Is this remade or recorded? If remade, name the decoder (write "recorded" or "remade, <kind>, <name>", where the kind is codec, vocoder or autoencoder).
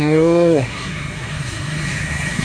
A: remade, codec, SNAC